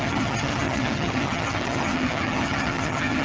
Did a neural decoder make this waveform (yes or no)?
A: yes